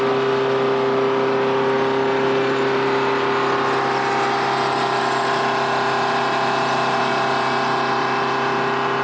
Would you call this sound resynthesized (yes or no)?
no